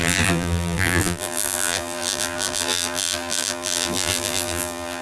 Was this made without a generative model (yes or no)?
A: no